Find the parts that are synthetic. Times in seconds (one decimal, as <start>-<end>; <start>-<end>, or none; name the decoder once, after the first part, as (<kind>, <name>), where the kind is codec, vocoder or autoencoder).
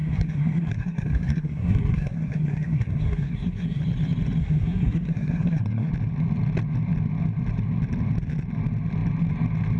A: 0.0-3.8 (codec, SNAC); 4.4-5.9